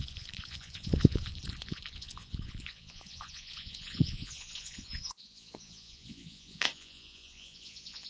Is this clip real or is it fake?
fake